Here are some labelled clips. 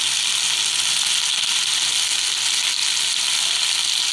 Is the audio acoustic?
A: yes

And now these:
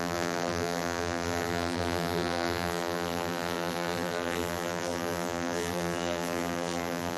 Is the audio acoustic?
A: no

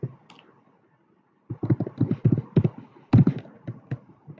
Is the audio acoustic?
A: yes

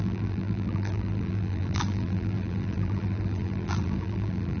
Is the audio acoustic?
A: no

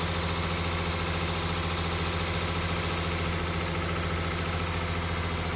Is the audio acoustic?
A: yes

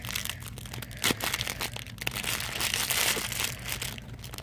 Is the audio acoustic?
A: yes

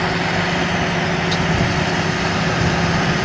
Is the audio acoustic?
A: yes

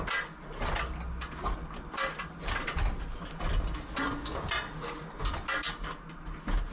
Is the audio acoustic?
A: yes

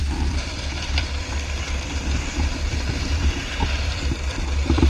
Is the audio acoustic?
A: no